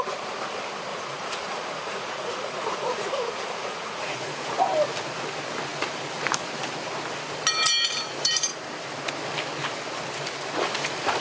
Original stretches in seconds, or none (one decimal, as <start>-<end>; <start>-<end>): 0.0-0.9; 4.5-11.2